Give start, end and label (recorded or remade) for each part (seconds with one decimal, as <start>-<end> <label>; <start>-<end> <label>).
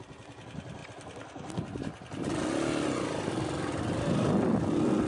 0.0-5.1 recorded